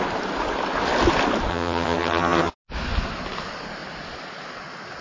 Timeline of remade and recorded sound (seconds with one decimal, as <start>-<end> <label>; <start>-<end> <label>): 0.0-1.5 recorded; 1.5-2.5 remade; 2.5-5.0 recorded